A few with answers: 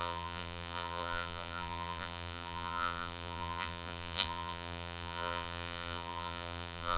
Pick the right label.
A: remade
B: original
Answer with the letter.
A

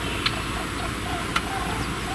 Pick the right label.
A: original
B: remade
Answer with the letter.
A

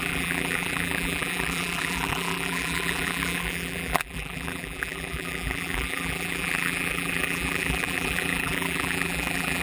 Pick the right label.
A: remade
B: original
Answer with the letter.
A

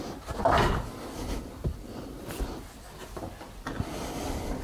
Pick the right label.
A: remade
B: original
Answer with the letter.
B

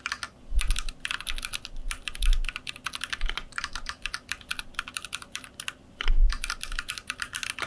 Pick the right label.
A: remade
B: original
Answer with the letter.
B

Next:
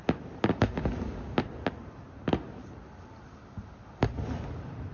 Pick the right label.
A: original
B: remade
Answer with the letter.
A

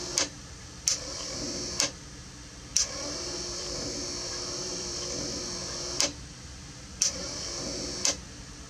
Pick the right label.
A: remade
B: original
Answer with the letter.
A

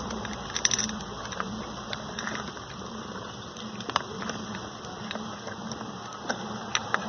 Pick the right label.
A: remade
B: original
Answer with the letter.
A